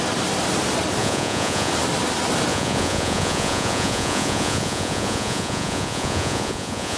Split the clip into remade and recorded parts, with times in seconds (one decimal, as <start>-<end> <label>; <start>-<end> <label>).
0.0-1.0 recorded; 1.0-1.7 remade; 1.7-2.5 recorded; 2.5-7.0 remade